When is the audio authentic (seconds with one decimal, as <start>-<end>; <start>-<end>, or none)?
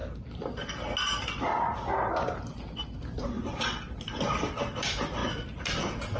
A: 0.0-6.2